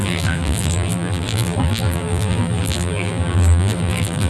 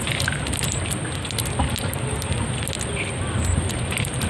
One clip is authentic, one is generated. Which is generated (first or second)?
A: first